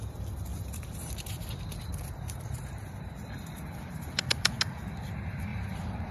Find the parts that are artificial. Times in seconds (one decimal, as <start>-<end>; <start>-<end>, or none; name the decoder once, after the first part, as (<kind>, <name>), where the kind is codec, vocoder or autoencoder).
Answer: 0.5-4.2 (vocoder, BigVGAN v2); 5.5-6.1

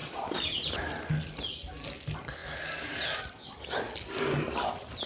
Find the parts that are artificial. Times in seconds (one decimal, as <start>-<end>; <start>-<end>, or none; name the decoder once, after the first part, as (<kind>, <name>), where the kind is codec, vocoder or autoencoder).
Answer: 0.0-0.7 (vocoder, BigVGAN v2)

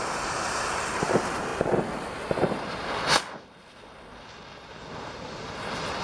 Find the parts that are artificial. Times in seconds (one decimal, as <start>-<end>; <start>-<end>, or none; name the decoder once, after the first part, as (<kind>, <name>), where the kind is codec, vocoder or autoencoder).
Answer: 0.0-1.5 (vocoder, BigVGAN v2); 5.1-6.0

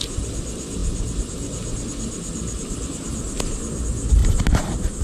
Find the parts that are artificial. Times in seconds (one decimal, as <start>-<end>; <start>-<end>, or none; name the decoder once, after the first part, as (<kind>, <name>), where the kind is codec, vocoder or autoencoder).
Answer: 4.2-5.0 (vocoder, BigVGAN v2)

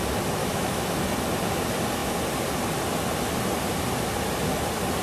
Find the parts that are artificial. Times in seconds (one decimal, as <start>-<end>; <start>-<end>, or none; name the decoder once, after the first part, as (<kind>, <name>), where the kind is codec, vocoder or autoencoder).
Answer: 0.4-1.0 (autoencoder, DAC-VAE)

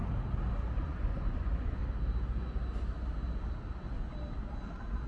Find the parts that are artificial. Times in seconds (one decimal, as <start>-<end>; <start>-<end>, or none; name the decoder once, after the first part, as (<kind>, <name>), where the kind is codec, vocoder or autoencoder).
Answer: 0.7-1.8 (vocoder, Vocos)

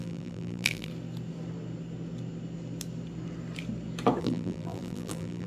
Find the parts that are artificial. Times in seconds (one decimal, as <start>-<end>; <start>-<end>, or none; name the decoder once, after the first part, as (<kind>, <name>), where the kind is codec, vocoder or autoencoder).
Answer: 0.0-0.9 (vocoder, BigVGAN v2); 4.2-5.5